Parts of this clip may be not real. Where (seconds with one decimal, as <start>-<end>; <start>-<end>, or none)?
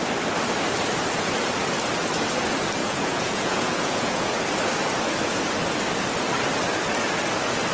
2.8-4.3